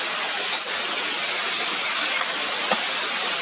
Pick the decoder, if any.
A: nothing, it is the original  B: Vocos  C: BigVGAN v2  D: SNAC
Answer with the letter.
A